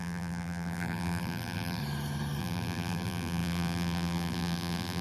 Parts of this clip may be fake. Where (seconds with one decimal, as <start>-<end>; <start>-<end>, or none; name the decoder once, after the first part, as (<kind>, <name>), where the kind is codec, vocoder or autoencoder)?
0.0-1.8 (vocoder, BigVGAN v2); 2.4-5.0